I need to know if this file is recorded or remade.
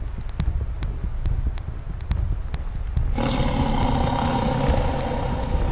recorded